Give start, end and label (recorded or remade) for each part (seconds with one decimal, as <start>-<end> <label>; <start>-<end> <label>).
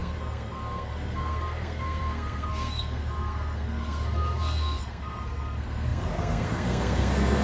0.0-7.4 remade